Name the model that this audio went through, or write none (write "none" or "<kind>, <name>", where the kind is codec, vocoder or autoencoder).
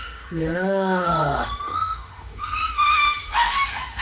autoencoder, DAC-VAE